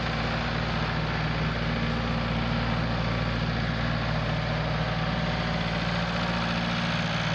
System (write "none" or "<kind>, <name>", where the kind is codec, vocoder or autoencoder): none